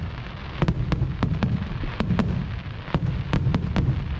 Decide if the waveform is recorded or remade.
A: recorded